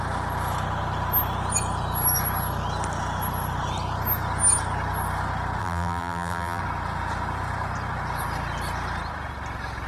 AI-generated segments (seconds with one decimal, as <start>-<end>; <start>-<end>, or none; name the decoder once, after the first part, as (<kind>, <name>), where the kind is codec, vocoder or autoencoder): 5.6-6.6 (vocoder, BigVGAN v2)